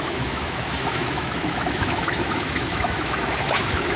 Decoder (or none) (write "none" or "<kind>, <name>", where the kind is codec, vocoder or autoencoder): autoencoder, DAC-VAE